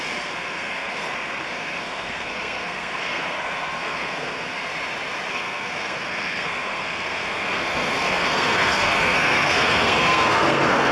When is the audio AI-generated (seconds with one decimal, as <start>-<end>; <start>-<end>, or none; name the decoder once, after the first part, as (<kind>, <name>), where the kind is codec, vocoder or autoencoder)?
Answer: 0.0-4.7 (codec, SNAC); 5.3-10.9

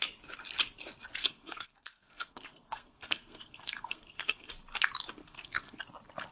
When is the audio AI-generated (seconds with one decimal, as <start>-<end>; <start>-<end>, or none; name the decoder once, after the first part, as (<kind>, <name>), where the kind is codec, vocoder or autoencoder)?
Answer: 1.2-4.5 (codec, SNAC); 5.2-5.8

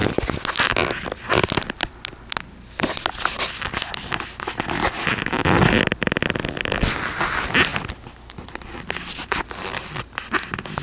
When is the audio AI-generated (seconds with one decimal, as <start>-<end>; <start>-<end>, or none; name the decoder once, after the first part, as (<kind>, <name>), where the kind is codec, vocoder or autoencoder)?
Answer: none

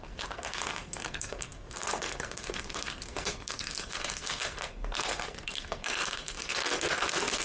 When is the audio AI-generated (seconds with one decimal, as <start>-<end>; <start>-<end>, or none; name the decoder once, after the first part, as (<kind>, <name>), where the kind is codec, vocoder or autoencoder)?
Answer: 0.0-7.4 (codec, SNAC)